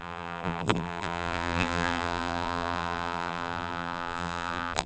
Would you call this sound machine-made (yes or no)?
yes